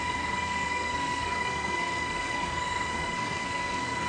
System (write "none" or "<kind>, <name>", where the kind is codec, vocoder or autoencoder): codec, SNAC